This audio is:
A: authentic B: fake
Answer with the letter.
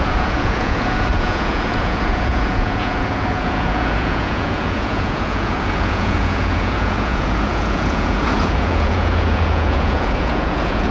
B